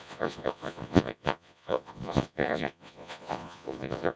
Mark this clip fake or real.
fake